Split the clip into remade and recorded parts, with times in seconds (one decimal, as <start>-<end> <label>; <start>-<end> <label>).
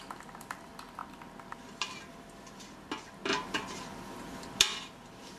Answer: 0.0-1.0 remade; 1.0-1.6 recorded; 1.6-5.4 remade